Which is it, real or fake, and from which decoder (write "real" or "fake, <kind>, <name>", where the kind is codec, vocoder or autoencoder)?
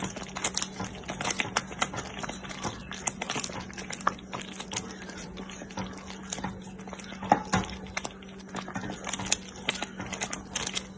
real